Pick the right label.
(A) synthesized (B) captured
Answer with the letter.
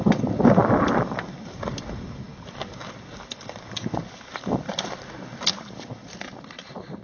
B